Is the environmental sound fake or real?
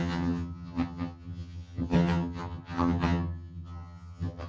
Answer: fake